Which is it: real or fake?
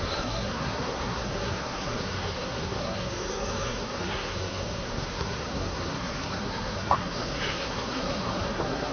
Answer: fake